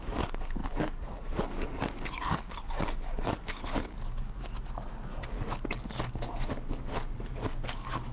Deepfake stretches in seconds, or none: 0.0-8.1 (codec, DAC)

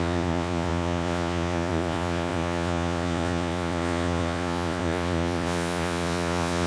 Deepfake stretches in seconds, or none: 0.0-6.7 (vocoder, Vocos)